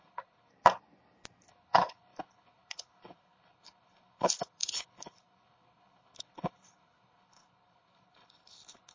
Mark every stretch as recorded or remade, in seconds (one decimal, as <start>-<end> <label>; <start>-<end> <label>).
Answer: 0.0-0.5 remade; 0.5-1.5 recorded; 1.5-8.9 remade